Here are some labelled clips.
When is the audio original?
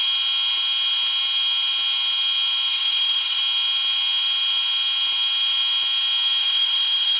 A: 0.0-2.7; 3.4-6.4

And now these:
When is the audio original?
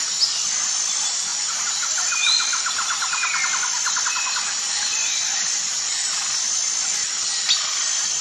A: 0.0-8.2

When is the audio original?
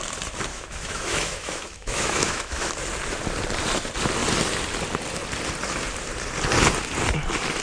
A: 0.0-0.5; 2.7-7.6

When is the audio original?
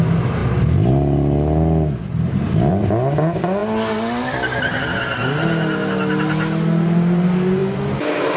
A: 0.0-8.4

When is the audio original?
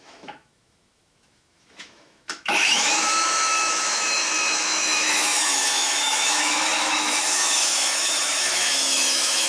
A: none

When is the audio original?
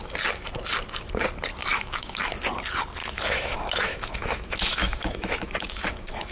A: 0.0-1.7; 2.3-3.0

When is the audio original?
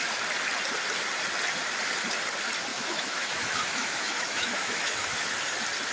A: 0.0-2.7; 5.3-5.9